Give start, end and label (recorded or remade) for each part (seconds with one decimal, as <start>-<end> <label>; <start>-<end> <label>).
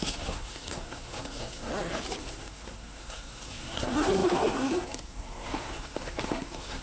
0.0-1.7 remade; 1.7-2.2 recorded; 2.2-6.8 remade